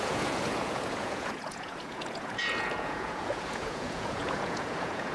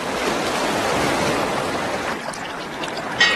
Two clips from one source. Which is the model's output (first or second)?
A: first